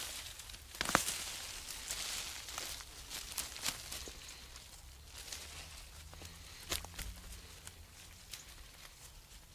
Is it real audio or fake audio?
real